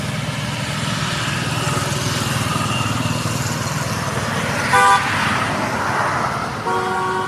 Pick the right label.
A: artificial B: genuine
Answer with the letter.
B